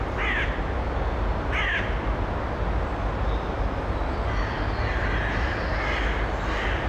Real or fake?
real